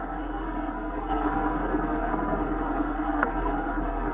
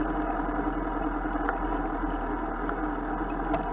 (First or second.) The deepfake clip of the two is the first